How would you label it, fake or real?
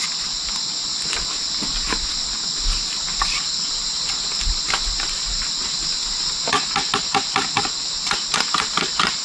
real